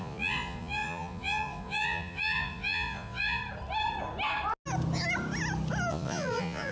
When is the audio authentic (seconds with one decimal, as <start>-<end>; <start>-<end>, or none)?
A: 3.4-5.9